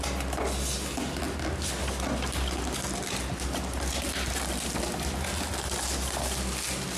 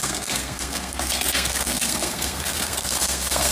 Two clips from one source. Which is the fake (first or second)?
second